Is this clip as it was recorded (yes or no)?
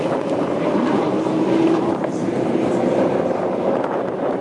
no